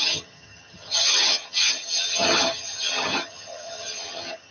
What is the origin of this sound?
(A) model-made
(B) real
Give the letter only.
A